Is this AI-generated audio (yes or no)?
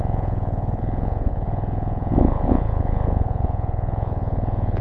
yes